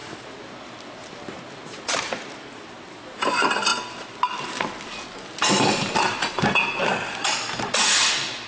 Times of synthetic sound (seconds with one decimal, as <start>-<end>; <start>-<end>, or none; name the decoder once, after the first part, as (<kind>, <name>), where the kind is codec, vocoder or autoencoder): none